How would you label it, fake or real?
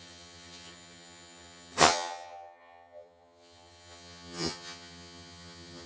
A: fake